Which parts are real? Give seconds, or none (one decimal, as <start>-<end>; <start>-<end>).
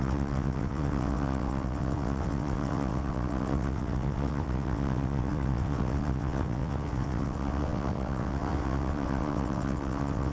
none